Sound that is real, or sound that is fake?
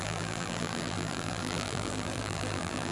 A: fake